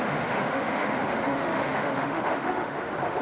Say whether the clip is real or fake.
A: fake